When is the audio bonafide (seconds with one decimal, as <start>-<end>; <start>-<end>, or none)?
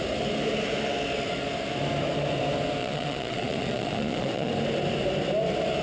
0.0-2.8; 4.5-5.8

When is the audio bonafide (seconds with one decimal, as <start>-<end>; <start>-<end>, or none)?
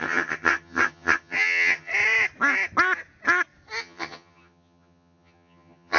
1.9-3.8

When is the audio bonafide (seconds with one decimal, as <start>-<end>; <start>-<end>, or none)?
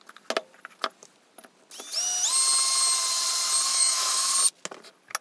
0.0-3.7; 4.3-5.2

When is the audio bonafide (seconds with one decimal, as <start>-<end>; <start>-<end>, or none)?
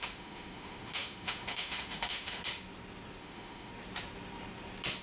2.4-3.2; 3.7-5.0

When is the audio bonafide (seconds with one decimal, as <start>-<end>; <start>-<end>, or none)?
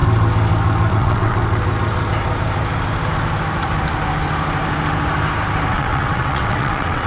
0.0-0.9; 1.4-5.7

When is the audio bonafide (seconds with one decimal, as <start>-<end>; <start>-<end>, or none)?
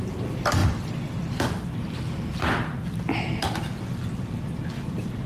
0.0-5.3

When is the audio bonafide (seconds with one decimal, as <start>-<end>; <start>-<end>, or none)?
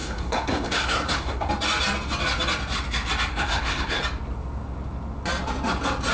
1.5-3.3; 4.0-6.1